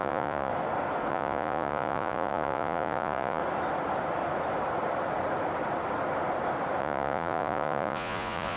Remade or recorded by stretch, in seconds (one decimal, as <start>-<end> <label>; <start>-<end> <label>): 0.0-0.5 remade; 0.5-1.1 recorded; 1.1-3.4 remade; 3.4-6.8 recorded; 6.8-8.6 remade